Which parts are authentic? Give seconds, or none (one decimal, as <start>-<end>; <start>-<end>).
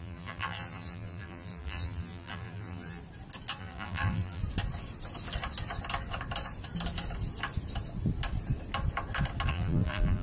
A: 3.0-3.6; 4.4-9.5